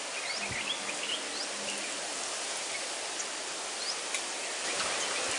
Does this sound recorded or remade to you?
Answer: recorded